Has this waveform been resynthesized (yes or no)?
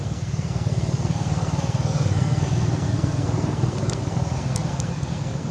yes